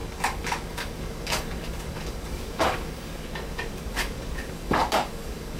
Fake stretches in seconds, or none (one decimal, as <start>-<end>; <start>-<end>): 0.0-5.6